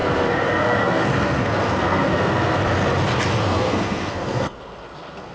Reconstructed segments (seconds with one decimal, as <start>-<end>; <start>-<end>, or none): 0.0-2.6; 3.4-5.3